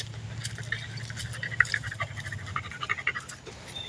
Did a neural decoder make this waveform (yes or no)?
no